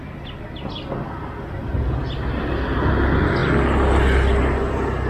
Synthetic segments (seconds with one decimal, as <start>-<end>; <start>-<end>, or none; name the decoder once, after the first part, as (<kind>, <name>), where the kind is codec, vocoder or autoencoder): none